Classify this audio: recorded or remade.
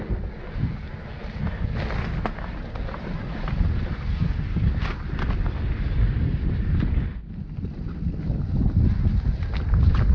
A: recorded